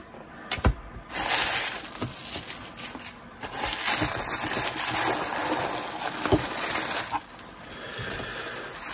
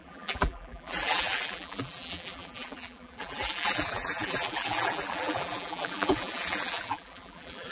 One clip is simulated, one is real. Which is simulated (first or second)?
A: second